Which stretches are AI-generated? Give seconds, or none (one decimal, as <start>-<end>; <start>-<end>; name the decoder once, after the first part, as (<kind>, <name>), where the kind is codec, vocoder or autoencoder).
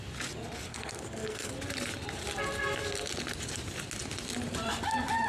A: 0.7-1.5 (codec, SNAC)